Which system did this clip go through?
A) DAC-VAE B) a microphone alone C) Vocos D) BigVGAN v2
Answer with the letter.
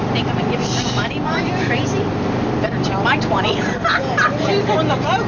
B